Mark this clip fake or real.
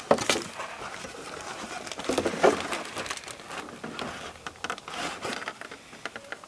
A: real